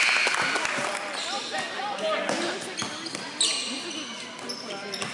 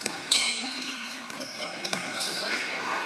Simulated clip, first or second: second